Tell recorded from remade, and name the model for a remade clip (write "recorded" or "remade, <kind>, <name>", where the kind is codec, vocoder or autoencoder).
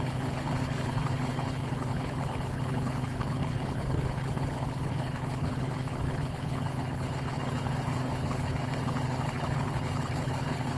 remade, codec, HILCodec